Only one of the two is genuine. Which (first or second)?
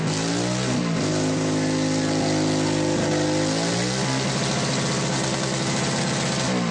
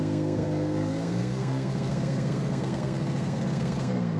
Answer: first